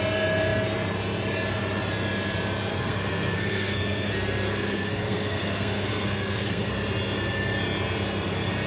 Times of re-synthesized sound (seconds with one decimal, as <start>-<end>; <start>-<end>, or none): 2.7-6.7